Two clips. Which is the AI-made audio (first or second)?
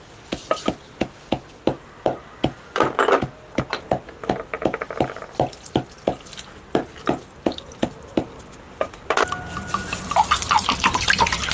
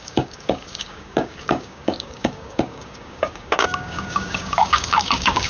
second